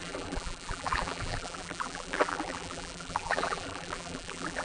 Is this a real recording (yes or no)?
no